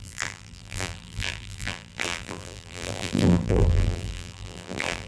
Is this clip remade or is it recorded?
remade